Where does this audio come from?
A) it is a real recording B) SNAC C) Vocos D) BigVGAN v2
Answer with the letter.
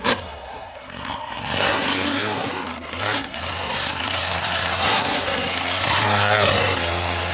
B